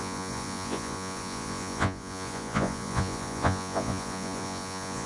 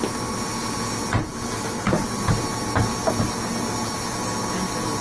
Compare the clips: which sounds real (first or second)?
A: second